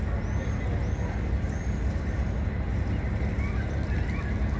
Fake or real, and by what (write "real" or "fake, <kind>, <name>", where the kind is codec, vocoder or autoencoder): real